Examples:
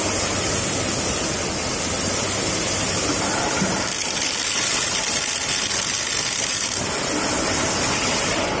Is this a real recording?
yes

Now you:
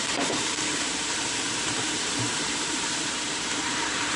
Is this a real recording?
no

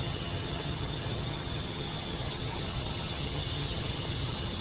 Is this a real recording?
no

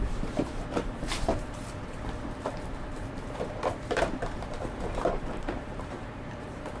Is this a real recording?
no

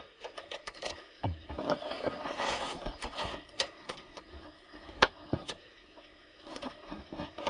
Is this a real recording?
no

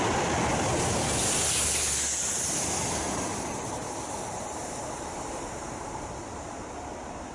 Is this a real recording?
yes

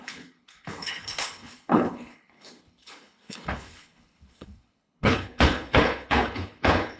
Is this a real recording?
no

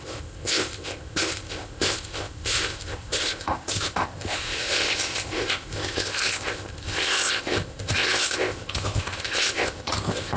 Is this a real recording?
no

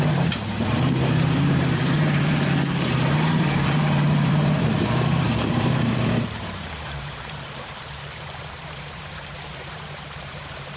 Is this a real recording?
no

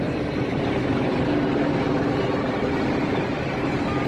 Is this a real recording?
yes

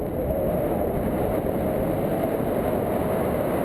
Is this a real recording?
yes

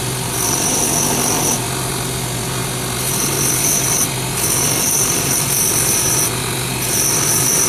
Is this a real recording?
yes